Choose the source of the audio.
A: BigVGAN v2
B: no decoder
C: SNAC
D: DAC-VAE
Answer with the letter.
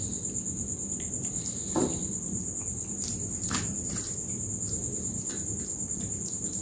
B